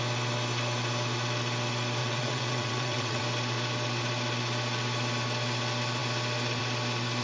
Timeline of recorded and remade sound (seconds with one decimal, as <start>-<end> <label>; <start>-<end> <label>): 0.0-2.0 recorded; 2.0-3.2 remade; 3.2-7.2 recorded